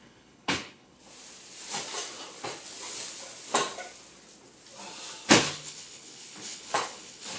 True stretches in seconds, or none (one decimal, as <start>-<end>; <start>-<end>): 1.0-5.4